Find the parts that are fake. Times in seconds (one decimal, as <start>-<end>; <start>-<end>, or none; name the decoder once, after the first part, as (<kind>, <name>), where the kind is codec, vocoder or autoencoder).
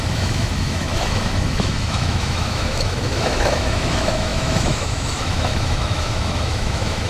0.0-7.1 (autoencoder, DAC-VAE)